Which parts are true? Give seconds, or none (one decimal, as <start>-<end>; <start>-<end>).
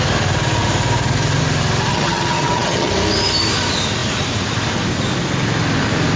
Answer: 0.0-1.9; 2.9-6.2